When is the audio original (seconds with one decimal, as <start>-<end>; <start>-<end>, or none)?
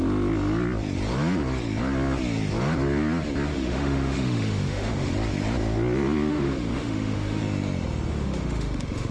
0.0-3.5; 5.1-6.3; 7.4-8.1